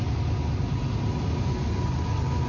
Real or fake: real